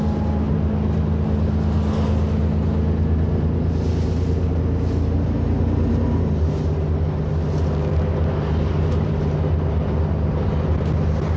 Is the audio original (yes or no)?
yes